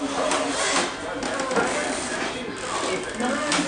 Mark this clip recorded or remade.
recorded